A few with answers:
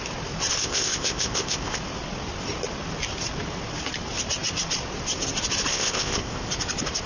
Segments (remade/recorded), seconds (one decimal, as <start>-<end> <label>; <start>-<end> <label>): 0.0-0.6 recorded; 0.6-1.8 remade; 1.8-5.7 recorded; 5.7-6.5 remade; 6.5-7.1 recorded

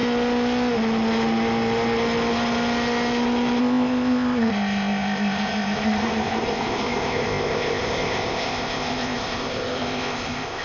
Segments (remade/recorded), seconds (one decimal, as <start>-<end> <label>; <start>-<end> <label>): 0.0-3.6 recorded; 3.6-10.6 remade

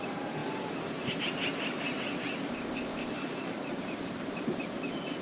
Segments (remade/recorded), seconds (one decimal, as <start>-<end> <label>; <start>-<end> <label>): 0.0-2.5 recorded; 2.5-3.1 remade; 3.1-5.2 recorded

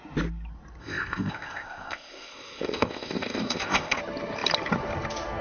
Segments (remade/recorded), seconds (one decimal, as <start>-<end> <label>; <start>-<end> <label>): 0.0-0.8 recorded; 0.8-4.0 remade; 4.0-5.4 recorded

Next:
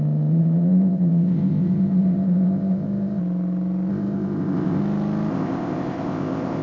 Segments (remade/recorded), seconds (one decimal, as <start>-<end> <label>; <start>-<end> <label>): 0.0-3.2 remade; 3.2-3.9 recorded; 3.9-4.8 remade; 4.8-5.3 recorded; 5.3-6.6 remade